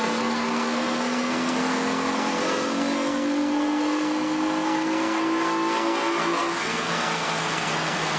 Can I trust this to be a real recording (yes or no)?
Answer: no